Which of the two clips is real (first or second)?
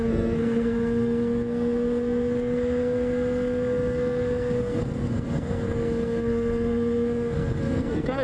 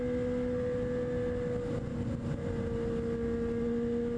second